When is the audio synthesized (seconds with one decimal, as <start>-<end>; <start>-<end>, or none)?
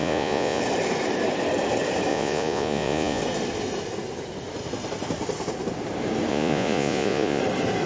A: 0.0-0.6; 2.1-3.2; 6.3-7.4